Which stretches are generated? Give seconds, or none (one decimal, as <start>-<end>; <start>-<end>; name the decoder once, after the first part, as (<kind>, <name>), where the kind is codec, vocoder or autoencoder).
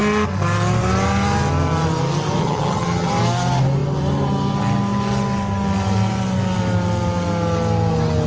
2.4-3.1 (vocoder, HiFi-GAN)